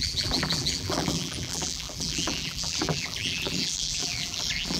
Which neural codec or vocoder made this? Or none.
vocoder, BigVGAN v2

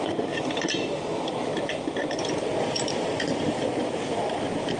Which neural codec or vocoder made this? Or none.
vocoder, BigVGAN v2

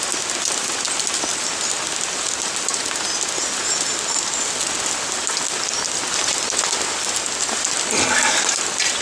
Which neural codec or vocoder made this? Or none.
none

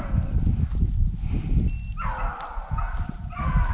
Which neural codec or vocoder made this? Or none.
none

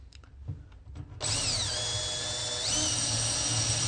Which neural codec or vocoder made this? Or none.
none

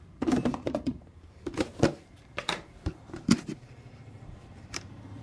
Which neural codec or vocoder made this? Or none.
vocoder, BigVGAN v2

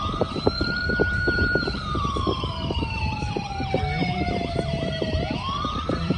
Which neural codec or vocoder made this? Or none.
vocoder, BigVGAN v2